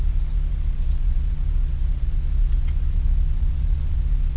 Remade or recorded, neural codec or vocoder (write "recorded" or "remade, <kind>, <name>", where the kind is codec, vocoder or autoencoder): remade, vocoder, Vocos